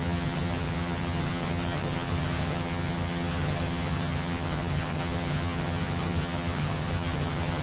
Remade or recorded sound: remade